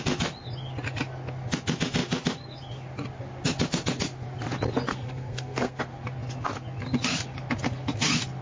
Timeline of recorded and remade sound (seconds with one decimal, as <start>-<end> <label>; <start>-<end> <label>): 0.0-4.9 recorded; 4.9-5.8 remade; 5.8-8.4 recorded